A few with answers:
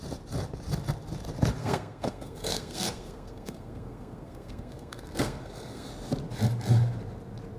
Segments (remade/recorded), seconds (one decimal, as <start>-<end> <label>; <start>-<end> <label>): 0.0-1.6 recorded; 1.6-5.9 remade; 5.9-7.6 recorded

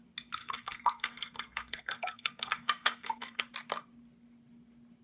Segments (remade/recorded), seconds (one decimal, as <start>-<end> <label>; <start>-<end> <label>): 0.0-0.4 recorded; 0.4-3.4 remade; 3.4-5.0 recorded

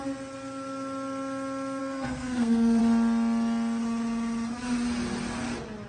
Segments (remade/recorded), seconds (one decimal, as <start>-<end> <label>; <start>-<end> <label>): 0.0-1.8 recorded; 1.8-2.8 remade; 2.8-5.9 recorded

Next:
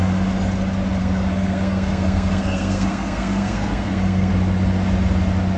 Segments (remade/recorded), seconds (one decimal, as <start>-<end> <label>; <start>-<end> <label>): 0.0-1.0 recorded; 1.0-4.3 remade; 4.3-5.6 recorded

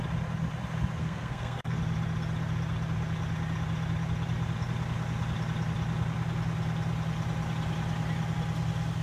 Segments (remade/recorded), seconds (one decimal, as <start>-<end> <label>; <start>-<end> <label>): 0.0-1.0 recorded; 1.0-1.8 remade; 1.8-9.0 recorded

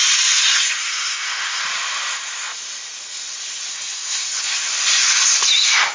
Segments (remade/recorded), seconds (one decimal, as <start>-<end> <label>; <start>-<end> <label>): 0.0-0.8 recorded; 0.8-1.6 remade; 1.6-3.7 recorded; 3.7-4.2 remade; 4.2-5.9 recorded